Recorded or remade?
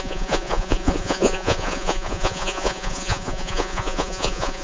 remade